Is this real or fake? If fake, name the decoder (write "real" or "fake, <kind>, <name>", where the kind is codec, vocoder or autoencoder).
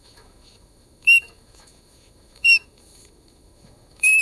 fake, autoencoder, DAC-VAE